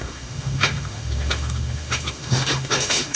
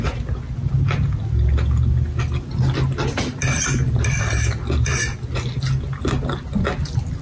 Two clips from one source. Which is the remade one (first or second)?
first